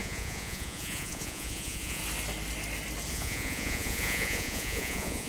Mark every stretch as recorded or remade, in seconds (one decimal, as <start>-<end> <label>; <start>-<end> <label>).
0.0-2.0 remade; 2.0-3.1 recorded; 3.1-5.3 remade